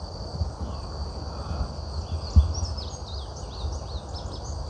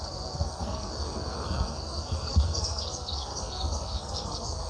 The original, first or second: first